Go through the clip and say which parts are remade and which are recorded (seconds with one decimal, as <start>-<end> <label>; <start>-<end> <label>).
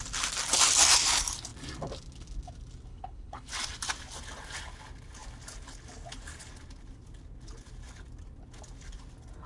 0.0-2.9 recorded; 2.9-3.5 remade; 3.5-9.5 recorded